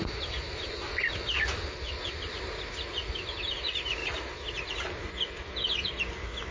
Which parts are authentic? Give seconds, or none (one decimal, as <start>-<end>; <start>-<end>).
0.0-6.5